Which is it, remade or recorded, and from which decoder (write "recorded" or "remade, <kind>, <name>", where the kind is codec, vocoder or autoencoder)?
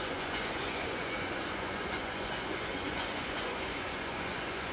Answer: remade, vocoder, Vocos